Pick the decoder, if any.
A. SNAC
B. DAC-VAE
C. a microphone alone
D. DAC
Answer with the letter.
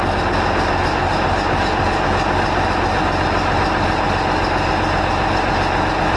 C